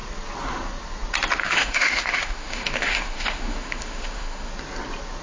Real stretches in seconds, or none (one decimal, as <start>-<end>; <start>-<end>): 0.0-1.4; 4.5-5.2